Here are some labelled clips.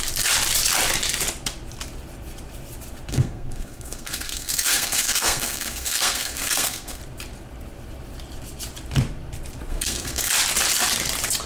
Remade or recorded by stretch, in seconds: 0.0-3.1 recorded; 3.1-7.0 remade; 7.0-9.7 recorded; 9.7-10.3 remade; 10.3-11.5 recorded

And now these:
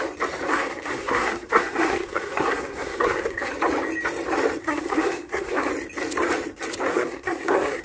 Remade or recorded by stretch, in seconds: 0.0-0.5 recorded; 0.5-3.5 remade; 3.5-4.6 recorded; 4.6-5.7 remade; 5.7-6.9 recorded; 6.9-7.8 remade

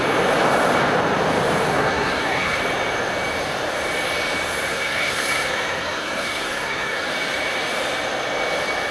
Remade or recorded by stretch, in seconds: 0.0-1.7 recorded; 1.7-2.6 remade; 2.6-4.7 recorded; 4.7-7.1 remade; 7.1-8.9 recorded

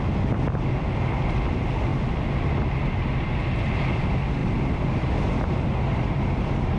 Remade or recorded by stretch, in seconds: 0.0-6.8 recorded

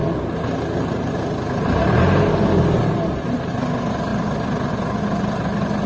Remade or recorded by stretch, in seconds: 0.0-5.9 recorded

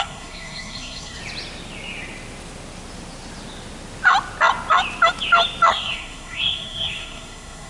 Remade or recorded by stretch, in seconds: 0.0-1.2 remade; 1.2-5.7 recorded; 5.7-7.7 remade